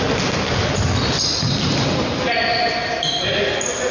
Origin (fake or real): real